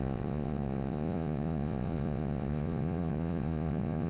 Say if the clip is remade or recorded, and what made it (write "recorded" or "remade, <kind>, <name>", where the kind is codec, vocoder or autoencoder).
remade, vocoder, Vocos